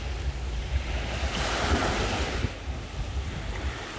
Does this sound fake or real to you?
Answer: real